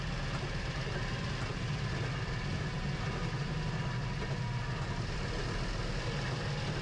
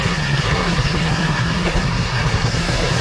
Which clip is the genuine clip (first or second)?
first